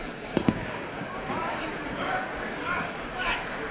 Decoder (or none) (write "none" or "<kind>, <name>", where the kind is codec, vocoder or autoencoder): codec, DAC